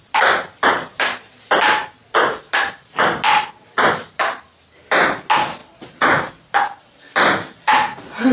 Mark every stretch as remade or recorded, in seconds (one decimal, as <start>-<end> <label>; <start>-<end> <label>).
0.0-8.3 recorded